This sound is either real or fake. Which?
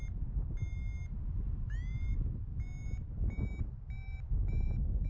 real